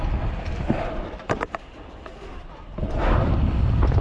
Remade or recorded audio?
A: remade